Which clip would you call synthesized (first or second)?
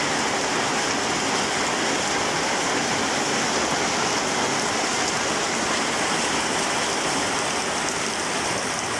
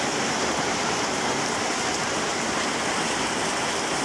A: second